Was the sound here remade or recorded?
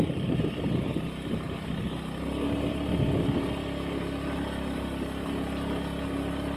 recorded